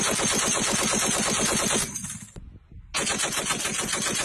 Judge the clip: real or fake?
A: real